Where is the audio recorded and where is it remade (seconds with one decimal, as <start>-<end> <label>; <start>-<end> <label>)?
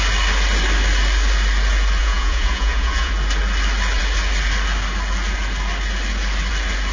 0.0-2.0 recorded; 2.0-3.1 remade; 3.1-6.9 recorded